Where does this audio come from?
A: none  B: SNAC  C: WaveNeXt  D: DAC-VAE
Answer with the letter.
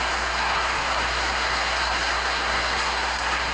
B